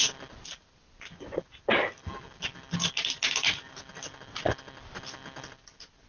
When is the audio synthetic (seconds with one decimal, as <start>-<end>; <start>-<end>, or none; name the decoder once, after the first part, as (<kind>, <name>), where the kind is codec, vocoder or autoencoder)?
none